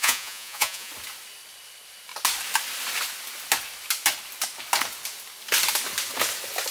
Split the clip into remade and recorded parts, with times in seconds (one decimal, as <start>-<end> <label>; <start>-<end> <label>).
0.0-0.9 remade; 0.9-6.7 recorded